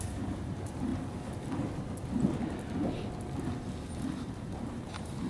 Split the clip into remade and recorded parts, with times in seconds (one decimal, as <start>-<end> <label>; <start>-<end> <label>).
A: 0.0-0.9 remade; 0.9-4.1 recorded; 4.1-5.3 remade